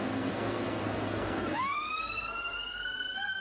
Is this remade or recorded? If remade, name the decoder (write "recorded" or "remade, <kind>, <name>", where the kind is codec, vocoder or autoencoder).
remade, codec, SNAC